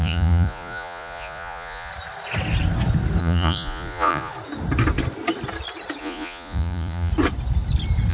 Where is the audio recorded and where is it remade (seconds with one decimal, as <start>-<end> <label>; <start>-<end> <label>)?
0.0-1.9 remade; 1.9-3.2 recorded; 3.2-4.3 remade; 4.3-6.0 recorded; 6.0-7.1 remade; 7.1-8.1 recorded